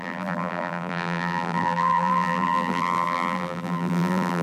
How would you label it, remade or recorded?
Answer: remade